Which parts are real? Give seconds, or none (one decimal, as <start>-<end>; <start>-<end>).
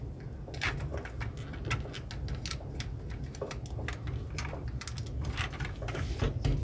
0.0-6.6